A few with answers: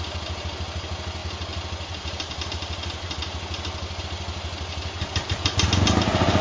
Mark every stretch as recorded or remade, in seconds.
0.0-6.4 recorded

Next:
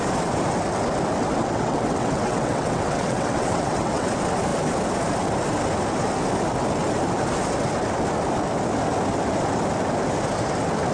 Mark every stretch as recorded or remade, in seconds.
0.0-1.4 recorded; 1.4-4.1 remade; 4.1-10.9 recorded

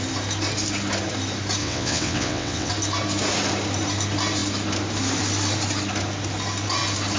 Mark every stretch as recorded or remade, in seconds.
0.0-1.6 recorded; 1.6-2.7 remade; 2.7-7.2 recorded